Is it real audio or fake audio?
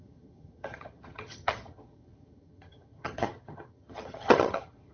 fake